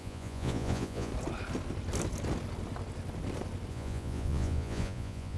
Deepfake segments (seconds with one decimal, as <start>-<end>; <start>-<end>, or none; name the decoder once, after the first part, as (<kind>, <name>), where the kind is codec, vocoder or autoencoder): 0.0-1.1 (vocoder, Vocos); 3.7-5.4